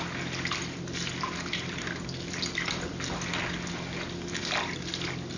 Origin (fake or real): real